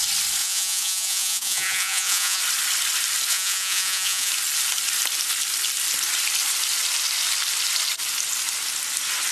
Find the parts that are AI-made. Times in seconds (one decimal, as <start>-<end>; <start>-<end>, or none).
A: 0.4-2.4; 3.3-4.3